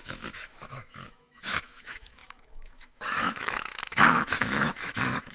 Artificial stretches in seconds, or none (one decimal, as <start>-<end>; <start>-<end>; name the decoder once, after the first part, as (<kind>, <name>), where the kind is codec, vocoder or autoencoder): 0.0-5.3 (autoencoder, DAC-VAE)